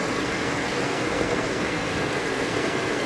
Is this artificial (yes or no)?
yes